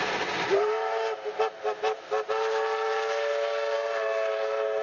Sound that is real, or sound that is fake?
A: real